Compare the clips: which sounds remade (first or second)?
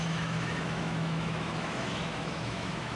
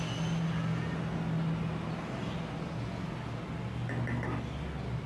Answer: first